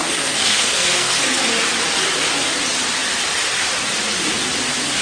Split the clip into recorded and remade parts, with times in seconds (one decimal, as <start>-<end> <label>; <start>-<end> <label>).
0.0-1.4 remade; 1.4-5.0 recorded